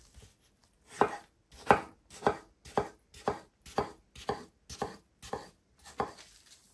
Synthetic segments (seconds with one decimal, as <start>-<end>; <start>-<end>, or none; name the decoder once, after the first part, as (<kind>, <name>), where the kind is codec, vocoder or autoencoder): none

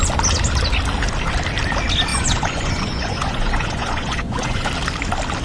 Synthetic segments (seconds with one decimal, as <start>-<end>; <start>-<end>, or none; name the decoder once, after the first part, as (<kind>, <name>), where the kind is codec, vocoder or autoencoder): 2.1-4.7 (vocoder, Vocos)